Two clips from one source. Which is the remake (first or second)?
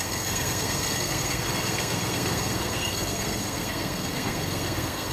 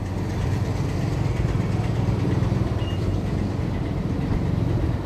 first